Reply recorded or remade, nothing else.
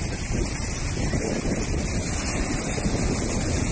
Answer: recorded